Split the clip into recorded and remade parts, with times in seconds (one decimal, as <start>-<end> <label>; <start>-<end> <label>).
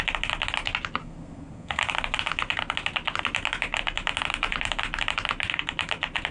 0.0-1.0 recorded; 1.0-1.8 remade; 1.8-6.3 recorded